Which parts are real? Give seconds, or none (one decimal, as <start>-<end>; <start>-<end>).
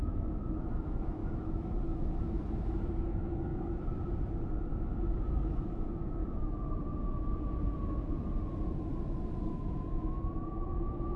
3.5-4.7; 6.2-9.4